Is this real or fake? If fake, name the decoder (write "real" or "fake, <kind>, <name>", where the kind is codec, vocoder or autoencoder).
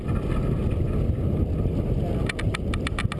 real